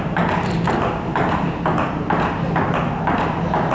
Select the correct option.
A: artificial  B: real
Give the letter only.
B